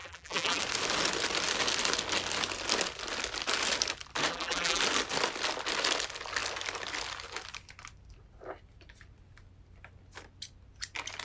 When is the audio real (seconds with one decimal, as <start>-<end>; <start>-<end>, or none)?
0.6-4.3; 4.8-11.2